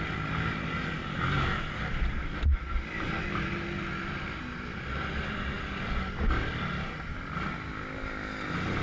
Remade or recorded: recorded